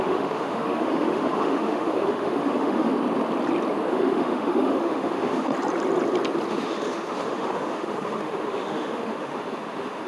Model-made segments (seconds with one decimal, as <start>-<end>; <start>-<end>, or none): 0.0-2.9; 3.9-5.5; 6.5-10.1